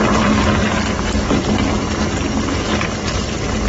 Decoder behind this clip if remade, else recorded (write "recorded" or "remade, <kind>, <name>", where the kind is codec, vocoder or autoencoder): recorded